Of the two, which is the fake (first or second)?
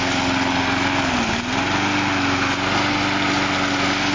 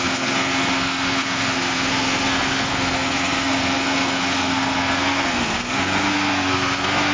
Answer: second